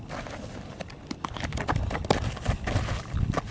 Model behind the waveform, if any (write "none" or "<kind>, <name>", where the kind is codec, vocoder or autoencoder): none